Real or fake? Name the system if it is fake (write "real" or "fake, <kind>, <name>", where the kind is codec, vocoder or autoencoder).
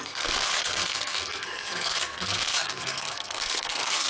fake, codec, SNAC